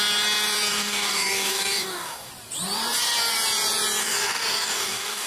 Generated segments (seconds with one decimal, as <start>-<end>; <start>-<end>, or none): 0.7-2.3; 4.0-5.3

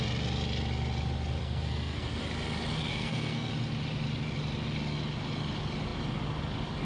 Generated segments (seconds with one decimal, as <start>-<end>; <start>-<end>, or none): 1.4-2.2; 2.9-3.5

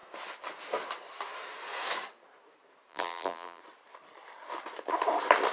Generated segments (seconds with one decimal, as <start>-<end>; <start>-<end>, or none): 2.9-3.6